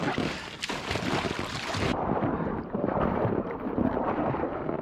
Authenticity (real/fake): real